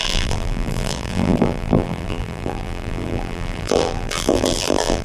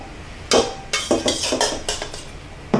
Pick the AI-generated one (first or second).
first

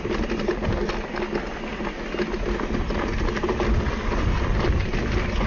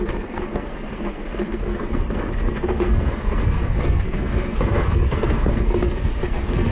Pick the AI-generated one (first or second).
second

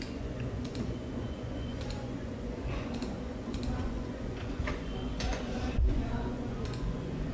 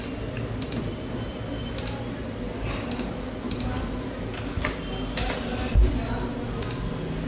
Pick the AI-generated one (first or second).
first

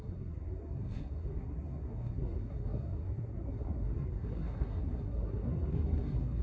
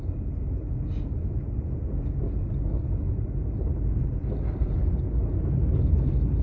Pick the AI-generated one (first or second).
first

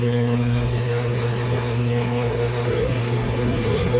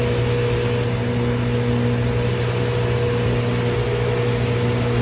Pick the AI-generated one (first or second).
first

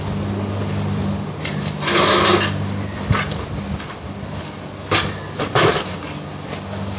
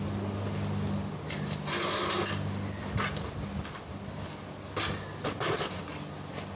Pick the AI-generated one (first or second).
first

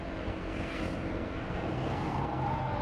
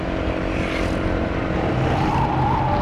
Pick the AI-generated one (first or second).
first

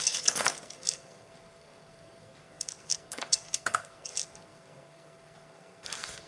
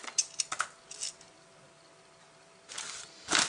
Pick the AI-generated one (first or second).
first